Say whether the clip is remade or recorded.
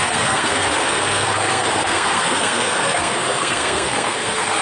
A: remade